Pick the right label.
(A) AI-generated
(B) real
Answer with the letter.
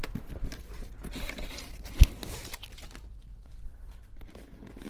B